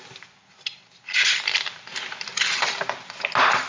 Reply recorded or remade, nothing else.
recorded